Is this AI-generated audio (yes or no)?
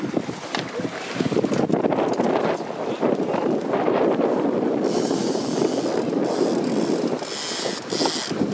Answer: no